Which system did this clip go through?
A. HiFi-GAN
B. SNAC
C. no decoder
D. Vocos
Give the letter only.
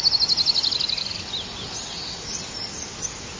C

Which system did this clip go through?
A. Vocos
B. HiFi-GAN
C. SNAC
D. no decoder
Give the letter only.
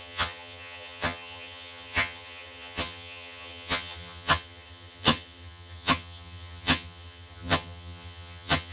B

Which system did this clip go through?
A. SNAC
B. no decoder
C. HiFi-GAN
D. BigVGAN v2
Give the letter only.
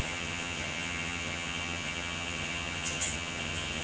C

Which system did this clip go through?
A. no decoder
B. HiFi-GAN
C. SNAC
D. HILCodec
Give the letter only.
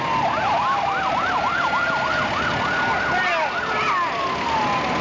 A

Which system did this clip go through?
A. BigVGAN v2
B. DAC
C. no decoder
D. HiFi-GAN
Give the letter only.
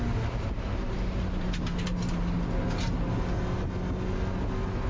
C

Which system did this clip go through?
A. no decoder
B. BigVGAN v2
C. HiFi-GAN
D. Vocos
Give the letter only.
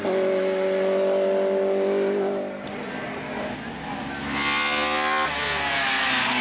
A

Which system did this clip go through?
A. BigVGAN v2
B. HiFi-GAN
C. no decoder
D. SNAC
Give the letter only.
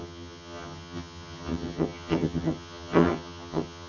B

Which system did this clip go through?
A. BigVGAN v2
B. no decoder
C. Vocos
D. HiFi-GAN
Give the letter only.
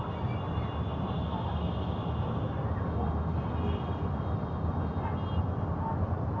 B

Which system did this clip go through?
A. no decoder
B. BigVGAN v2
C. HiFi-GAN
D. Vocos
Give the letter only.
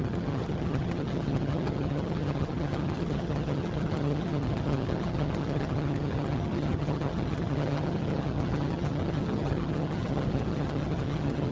C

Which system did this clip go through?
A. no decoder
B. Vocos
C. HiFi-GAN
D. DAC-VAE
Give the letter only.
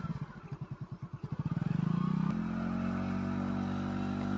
A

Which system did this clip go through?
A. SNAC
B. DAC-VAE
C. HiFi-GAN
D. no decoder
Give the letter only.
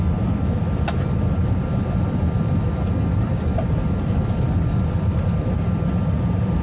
D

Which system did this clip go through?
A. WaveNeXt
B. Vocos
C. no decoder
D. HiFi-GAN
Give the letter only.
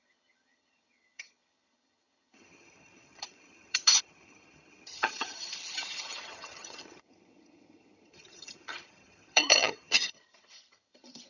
D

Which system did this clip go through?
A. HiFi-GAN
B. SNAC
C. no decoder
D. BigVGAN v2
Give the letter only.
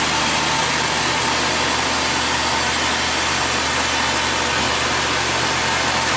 C